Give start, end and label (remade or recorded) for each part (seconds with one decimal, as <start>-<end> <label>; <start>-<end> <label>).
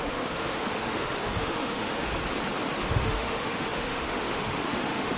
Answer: 0.0-2.1 remade; 2.1-2.9 recorded; 2.9-5.2 remade